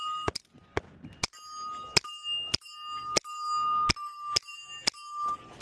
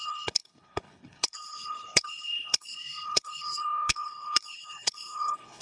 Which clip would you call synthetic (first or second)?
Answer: second